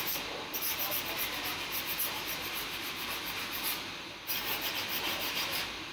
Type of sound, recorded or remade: remade